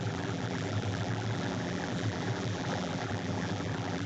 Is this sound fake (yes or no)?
yes